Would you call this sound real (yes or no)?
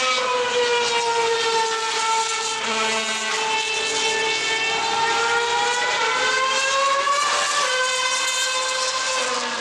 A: yes